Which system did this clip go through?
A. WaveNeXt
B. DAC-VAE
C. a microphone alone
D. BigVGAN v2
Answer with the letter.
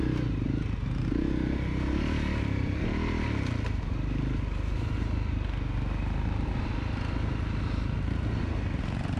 C